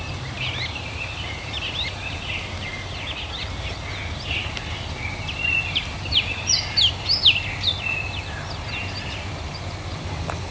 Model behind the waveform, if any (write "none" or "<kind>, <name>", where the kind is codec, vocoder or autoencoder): none